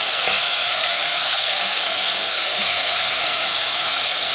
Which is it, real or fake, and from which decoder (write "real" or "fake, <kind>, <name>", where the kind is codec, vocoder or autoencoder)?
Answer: fake, codec, SNAC